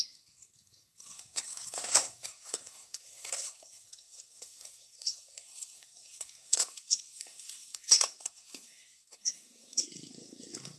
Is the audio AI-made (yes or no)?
yes